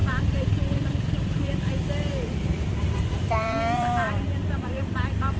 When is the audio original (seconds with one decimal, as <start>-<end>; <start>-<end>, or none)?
none